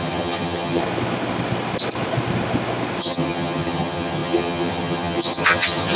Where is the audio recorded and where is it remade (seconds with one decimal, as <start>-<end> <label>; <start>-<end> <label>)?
0.0-0.8 remade; 0.8-3.0 recorded; 3.0-6.0 remade

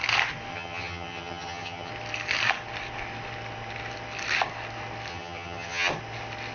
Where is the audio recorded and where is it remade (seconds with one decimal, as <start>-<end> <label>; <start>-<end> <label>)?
0.0-0.5 recorded; 0.5-1.9 remade; 1.9-5.1 recorded; 5.1-5.9 remade; 5.9-6.5 recorded

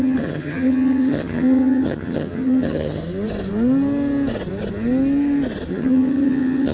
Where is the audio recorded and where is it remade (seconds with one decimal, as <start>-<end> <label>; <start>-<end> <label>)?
0.0-3.0 remade; 3.0-5.7 recorded; 5.7-6.7 remade